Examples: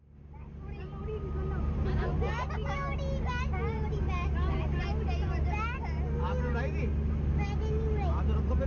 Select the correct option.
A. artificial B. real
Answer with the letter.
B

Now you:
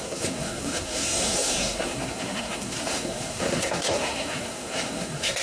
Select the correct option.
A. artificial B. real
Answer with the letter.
A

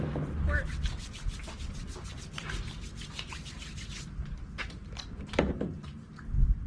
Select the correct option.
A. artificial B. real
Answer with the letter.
B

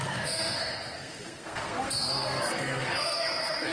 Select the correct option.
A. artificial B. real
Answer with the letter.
A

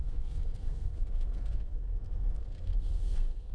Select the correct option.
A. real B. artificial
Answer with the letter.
B